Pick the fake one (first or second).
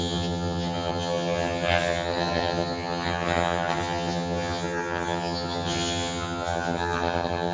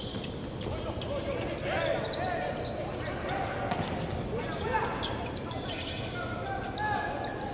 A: first